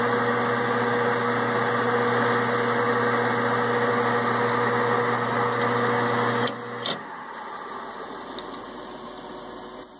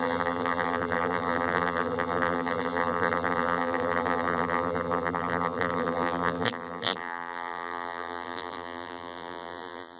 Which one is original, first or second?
first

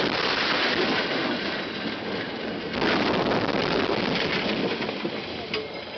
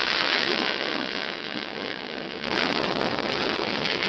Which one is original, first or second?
first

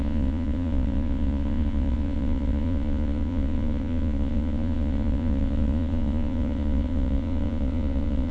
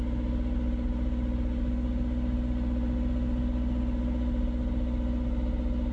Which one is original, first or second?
second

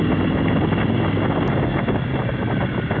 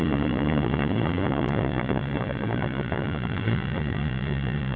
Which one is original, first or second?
first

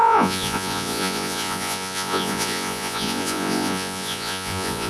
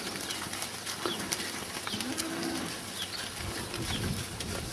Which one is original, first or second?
second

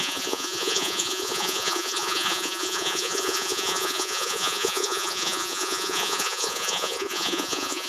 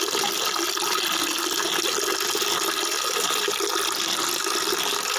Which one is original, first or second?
second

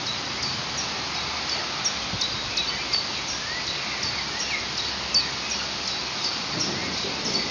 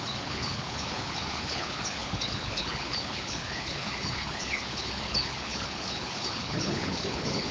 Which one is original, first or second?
first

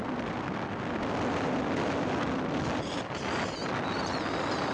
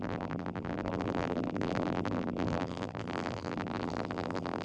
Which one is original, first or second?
first